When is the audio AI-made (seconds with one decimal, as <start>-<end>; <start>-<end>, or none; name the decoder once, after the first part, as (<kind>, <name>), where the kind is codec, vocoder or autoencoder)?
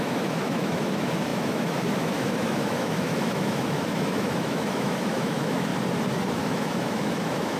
0.0-5.7 (autoencoder, DAC-VAE); 6.3-7.6